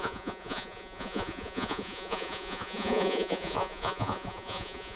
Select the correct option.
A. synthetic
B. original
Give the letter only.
A